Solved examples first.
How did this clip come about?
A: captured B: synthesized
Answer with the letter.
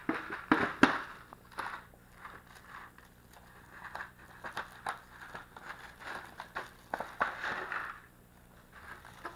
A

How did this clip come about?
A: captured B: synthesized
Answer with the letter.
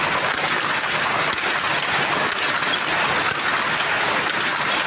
A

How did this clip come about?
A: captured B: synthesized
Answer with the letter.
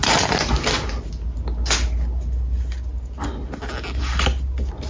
A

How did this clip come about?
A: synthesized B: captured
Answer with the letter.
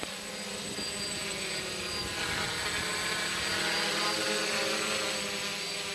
B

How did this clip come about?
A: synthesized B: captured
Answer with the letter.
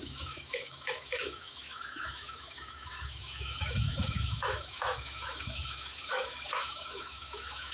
A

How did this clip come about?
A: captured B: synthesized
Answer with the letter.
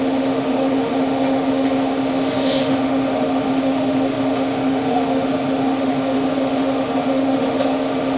B